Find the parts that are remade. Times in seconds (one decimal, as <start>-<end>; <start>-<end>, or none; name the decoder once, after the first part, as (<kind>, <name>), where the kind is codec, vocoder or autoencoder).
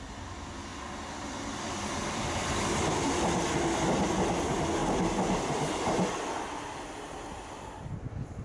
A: 0.7-3.6 (vocoder, BigVGAN v2)